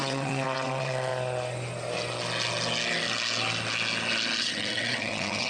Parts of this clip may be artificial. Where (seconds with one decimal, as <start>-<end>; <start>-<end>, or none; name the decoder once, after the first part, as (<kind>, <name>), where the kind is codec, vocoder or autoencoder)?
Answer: 0.0-1.1 (vocoder, WaveNeXt); 4.4-5.5